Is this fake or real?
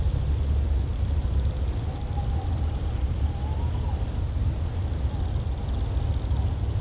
real